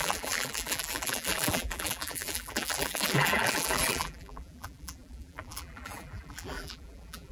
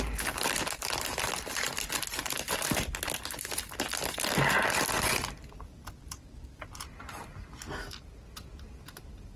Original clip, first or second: second